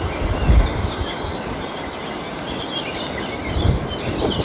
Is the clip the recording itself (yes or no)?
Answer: yes